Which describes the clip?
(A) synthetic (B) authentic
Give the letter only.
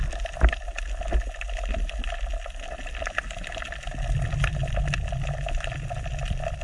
B